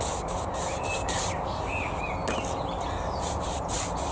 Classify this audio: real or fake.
real